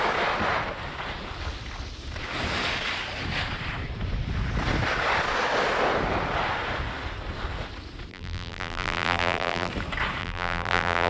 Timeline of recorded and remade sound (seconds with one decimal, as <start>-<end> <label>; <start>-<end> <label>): 0.0-8.1 recorded; 8.1-9.7 remade; 9.7-10.2 recorded; 10.2-11.1 remade